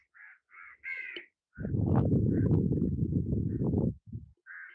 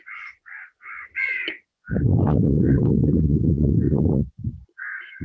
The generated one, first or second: second